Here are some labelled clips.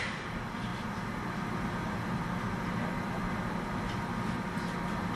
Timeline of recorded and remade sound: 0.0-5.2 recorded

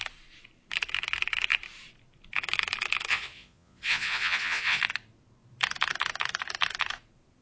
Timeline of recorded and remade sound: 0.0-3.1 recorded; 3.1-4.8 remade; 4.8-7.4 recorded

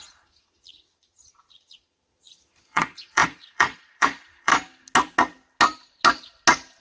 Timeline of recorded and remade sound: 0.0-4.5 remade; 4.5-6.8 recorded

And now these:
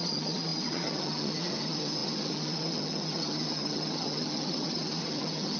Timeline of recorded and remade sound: 0.0-5.6 remade